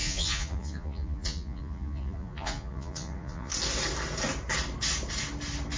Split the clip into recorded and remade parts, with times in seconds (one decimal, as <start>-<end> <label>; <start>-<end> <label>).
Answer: 0.0-3.5 remade; 3.5-5.8 recorded